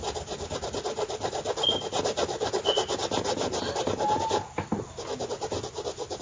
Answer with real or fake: real